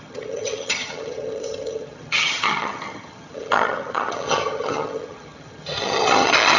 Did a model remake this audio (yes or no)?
yes